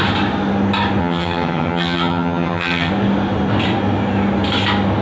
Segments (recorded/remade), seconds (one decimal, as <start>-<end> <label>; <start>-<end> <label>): 0.0-1.0 recorded; 1.0-2.9 remade; 2.9-5.0 recorded